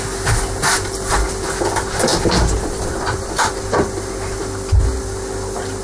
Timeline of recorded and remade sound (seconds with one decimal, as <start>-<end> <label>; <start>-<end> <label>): 0.0-2.1 recorded; 2.1-3.5 remade; 3.5-5.8 recorded